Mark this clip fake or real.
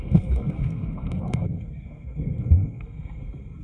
fake